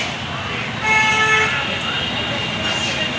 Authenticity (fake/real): real